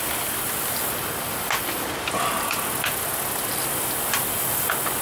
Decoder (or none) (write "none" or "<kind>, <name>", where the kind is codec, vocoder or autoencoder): none